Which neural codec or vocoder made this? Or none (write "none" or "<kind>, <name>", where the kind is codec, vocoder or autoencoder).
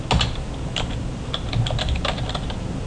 none